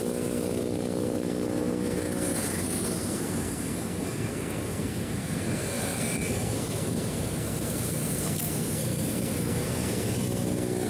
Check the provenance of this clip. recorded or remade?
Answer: remade